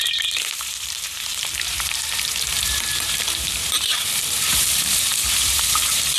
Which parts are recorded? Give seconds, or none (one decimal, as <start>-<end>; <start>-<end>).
none